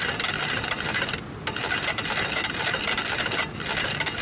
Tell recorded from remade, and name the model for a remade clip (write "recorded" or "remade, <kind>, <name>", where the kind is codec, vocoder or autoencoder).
recorded